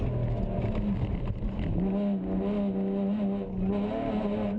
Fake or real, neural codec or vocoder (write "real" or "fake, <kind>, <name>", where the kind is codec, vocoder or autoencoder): real